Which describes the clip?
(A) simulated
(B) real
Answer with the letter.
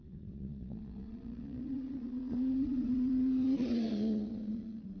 A